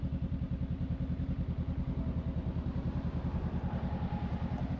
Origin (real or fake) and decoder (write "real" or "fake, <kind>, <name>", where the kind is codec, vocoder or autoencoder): real